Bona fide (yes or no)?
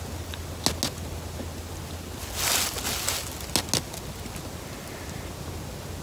yes